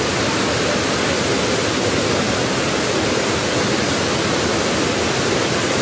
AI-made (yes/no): no